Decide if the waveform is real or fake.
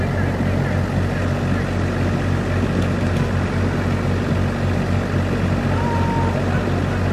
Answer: real